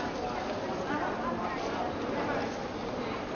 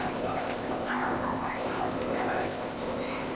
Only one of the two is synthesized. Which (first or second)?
second